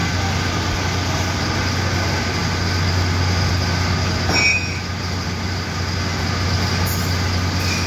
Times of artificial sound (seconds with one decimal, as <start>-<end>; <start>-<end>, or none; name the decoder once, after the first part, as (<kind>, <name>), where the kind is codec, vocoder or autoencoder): 4.5-5.0 (autoencoder, DAC-VAE)